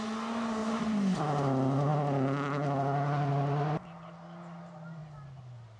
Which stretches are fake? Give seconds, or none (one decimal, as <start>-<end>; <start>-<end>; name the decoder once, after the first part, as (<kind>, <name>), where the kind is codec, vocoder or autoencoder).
0.6-1.2 (vocoder, BigVGAN v2)